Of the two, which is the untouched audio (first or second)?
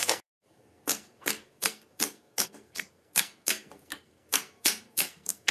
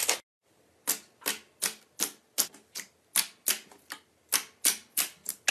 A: second